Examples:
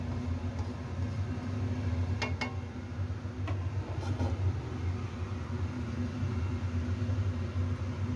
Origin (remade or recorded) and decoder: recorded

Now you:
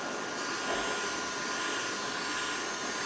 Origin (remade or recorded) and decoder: recorded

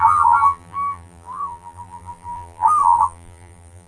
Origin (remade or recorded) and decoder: remade, vocoder, BigVGAN v2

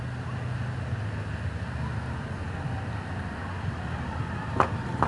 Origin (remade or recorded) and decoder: remade, vocoder, BigVGAN v2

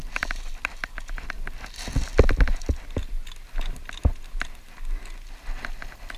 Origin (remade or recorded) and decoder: recorded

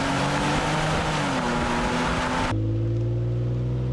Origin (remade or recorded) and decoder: recorded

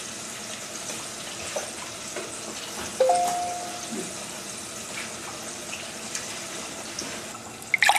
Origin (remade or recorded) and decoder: recorded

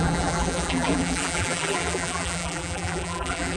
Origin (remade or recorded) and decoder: remade, vocoder, BigVGAN v2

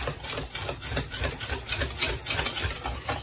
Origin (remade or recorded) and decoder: recorded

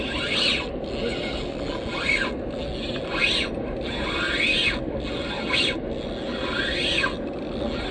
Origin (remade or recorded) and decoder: recorded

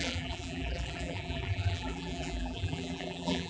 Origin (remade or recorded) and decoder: remade, vocoder, BigVGAN v2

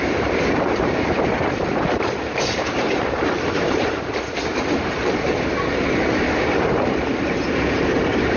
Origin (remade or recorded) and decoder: remade, vocoder, BigVGAN v2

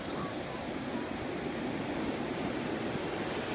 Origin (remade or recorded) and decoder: recorded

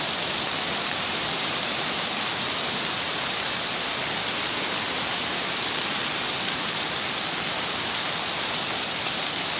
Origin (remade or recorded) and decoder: remade, vocoder, BigVGAN v2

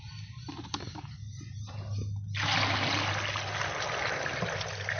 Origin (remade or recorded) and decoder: recorded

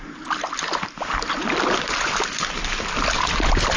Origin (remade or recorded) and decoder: recorded